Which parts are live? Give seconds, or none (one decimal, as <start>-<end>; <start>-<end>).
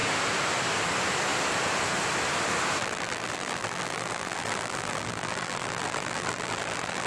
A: 0.0-2.8